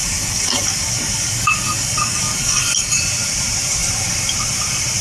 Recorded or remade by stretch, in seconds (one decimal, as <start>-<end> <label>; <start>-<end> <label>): 0.0-3.0 remade; 3.0-5.0 recorded